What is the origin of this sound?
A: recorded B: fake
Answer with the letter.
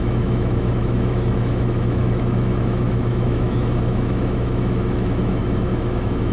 B